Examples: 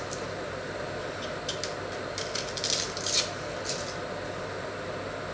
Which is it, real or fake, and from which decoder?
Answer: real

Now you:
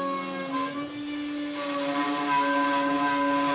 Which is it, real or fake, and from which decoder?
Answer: real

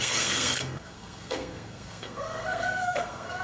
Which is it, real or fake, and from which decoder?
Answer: fake, codec, SNAC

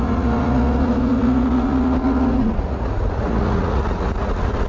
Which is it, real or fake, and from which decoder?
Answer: fake, vocoder, Vocos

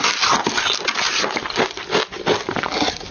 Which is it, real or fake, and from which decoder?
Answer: real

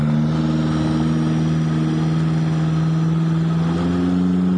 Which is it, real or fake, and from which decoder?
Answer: real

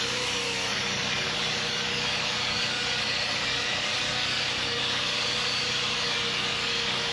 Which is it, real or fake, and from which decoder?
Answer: fake, codec, DAC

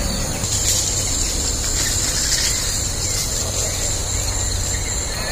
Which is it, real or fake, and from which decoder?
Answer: fake, vocoder, BigVGAN v2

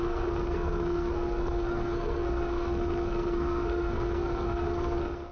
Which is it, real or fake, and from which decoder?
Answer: fake, codec, SNAC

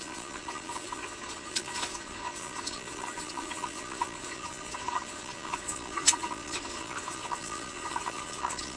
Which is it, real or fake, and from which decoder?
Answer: fake, vocoder, Vocos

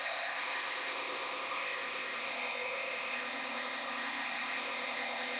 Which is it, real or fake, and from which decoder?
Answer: fake, codec, ZipCodec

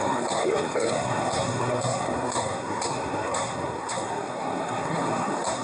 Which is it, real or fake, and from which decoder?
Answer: fake, codec, SNAC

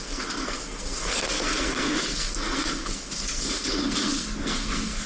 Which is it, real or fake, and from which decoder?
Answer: fake, codec, SNAC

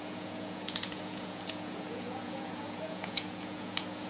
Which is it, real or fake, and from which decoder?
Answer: fake, vocoder, Vocos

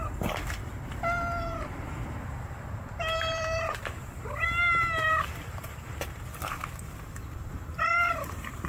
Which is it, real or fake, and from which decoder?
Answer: fake, vocoder, BigVGAN v2